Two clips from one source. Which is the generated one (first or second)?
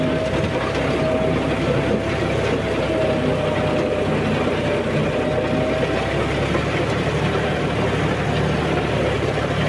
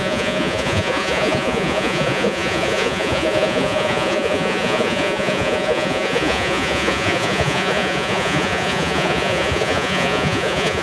second